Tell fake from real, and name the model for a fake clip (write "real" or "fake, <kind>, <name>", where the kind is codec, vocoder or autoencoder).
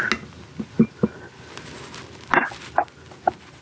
real